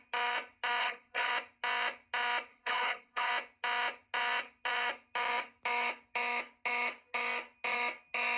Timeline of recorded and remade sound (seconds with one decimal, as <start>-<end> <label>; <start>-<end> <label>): 0.0-0.8 recorded; 0.8-1.3 remade; 1.3-2.5 recorded; 2.5-3.3 remade; 3.3-8.4 recorded